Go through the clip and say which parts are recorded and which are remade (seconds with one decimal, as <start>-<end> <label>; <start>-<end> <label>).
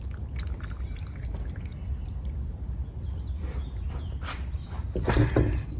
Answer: 0.0-5.8 recorded